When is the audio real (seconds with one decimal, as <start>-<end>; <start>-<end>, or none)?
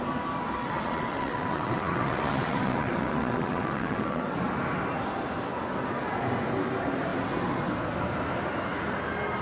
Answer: 0.0-0.6; 4.2-9.4